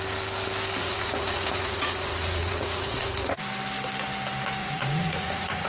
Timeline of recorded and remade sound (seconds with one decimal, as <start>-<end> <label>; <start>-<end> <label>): 0.0-0.8 recorded; 0.8-3.4 remade; 3.4-4.6 recorded; 4.6-5.7 remade